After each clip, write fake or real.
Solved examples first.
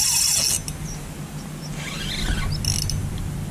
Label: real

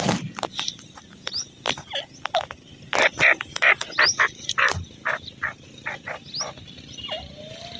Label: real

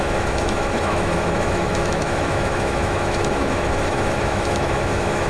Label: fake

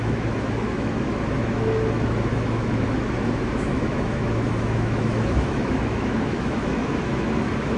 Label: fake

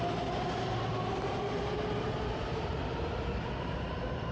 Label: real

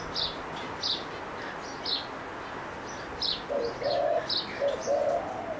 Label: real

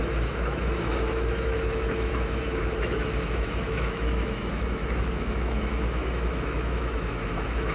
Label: fake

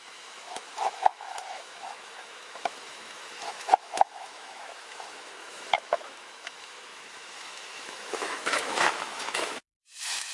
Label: fake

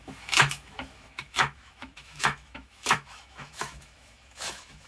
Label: fake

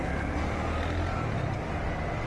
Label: real